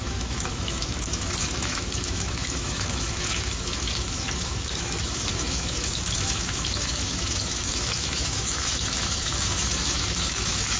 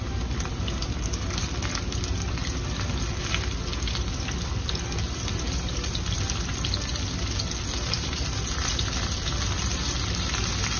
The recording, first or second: second